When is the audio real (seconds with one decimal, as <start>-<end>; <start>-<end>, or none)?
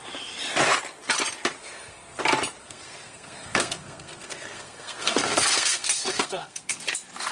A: 0.0-1.6; 2.2-2.6; 6.8-7.3